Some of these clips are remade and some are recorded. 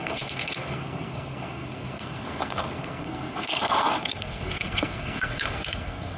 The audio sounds remade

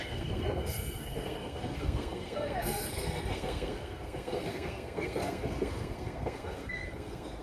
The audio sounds remade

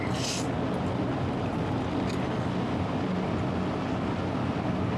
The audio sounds recorded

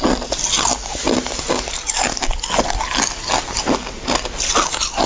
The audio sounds recorded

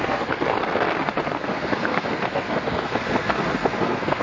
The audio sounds remade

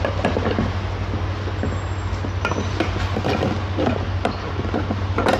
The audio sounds recorded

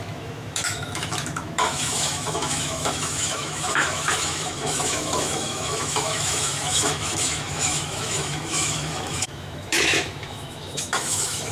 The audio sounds remade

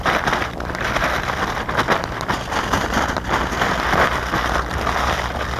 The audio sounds recorded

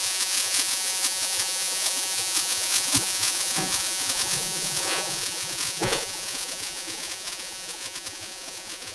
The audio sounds remade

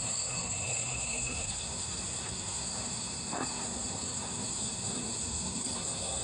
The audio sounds remade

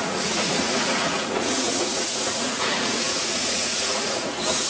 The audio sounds remade